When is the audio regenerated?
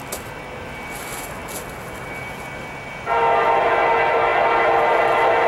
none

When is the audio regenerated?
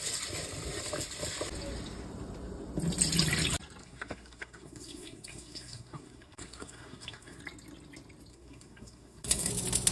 3.8-7.4 (codec, SNAC); 8.3-9.5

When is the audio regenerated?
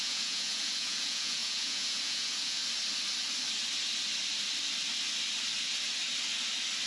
0.0-2.6 (vocoder, Vocos)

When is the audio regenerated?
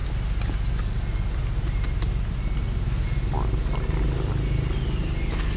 none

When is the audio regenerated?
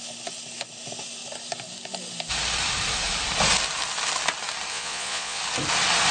4.7-5.4 (vocoder, Vocos)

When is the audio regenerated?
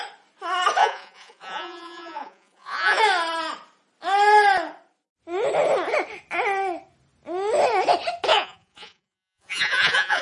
0.8-3.0 (vocoder, Vocos); 8.3-10.2